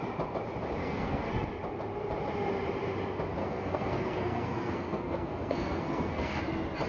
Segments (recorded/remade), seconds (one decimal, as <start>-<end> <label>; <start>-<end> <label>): 0.0-0.8 recorded; 0.8-1.3 remade; 1.3-3.4 recorded; 3.4-6.4 remade; 6.4-6.9 recorded